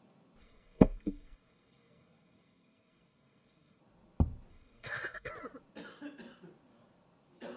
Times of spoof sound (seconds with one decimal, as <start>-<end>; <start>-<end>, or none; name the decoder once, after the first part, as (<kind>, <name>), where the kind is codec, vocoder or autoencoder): 0.4-3.8 (codec, SNAC); 4.5-5.3